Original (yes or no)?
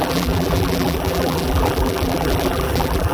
no